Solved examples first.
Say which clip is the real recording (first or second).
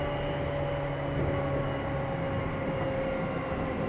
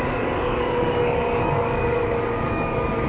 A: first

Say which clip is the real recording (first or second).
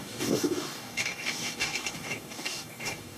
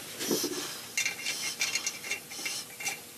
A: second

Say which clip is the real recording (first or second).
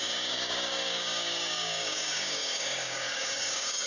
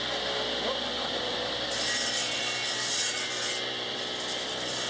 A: second